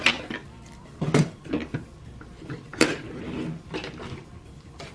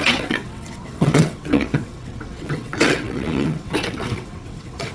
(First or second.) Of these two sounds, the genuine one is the first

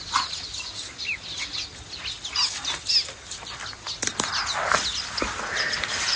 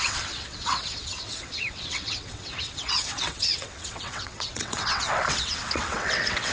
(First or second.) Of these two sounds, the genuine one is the first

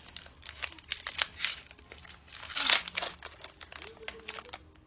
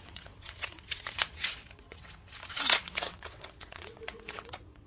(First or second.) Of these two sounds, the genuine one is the first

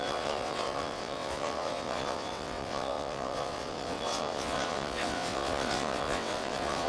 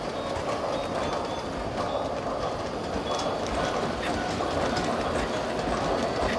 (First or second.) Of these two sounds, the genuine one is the second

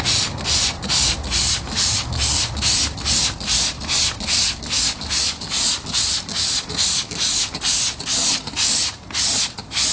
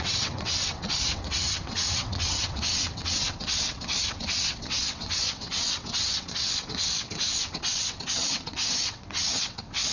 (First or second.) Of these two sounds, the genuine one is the first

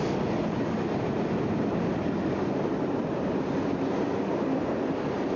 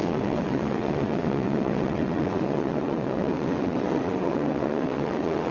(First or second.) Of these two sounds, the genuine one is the first